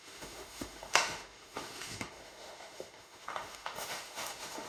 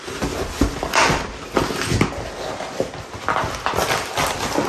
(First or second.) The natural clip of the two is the second